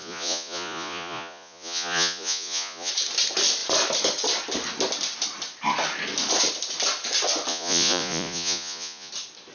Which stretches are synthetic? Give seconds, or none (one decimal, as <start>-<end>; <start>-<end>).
0.0-2.9; 7.5-9.1